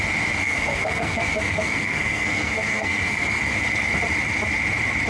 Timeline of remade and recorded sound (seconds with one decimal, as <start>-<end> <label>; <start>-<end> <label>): 0.0-0.4 recorded; 0.4-3.4 remade; 3.4-5.1 recorded